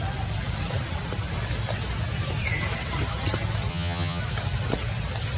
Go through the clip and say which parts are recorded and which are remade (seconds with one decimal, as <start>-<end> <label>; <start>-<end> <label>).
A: 0.0-3.7 recorded; 3.7-4.2 remade; 4.2-5.4 recorded